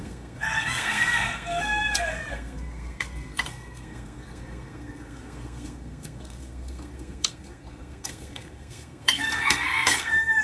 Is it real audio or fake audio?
fake